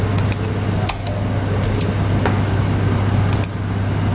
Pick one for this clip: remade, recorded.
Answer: recorded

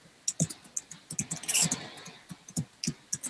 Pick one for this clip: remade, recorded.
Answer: recorded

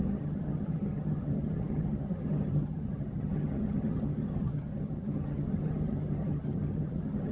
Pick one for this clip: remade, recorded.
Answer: remade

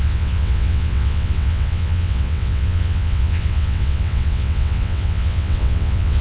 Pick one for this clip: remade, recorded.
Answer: remade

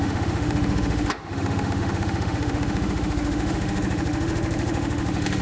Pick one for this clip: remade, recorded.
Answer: remade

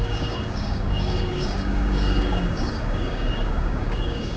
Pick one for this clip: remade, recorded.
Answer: remade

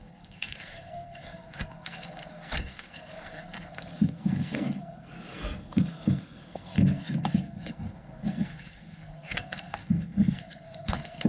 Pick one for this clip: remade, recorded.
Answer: remade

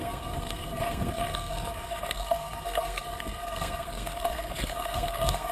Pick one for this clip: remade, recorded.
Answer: remade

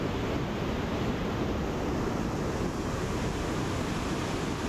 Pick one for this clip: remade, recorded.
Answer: recorded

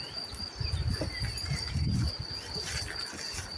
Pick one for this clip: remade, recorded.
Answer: recorded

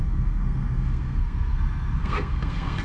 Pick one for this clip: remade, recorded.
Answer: remade